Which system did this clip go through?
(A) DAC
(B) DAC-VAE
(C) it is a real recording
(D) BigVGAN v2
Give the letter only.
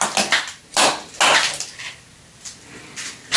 C